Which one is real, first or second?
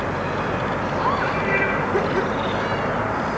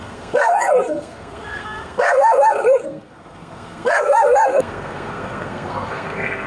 first